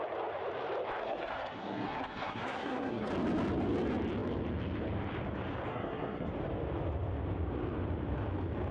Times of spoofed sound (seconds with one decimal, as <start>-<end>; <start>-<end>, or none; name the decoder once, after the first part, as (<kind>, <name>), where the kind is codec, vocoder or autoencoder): 1.0-3.1 (codec, SNAC); 5.7-6.3